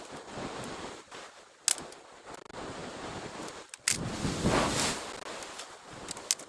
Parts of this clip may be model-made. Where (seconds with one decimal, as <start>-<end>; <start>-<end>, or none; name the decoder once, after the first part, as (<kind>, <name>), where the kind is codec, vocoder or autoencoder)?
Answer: none